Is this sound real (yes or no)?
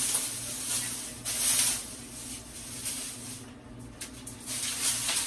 yes